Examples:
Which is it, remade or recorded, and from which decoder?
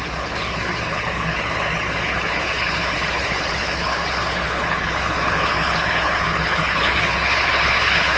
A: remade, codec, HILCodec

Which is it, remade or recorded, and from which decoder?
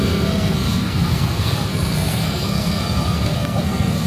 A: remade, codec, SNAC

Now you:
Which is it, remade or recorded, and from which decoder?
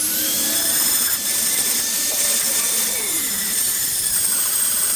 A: remade, vocoder, BigVGAN v2